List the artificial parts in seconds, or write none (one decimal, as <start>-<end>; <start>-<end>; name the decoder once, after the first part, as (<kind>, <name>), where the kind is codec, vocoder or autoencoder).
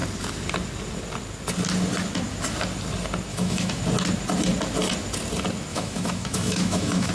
3.3-3.8 (autoencoder, DAC-VAE); 5.7-7.1